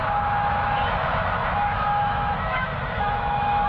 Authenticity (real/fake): fake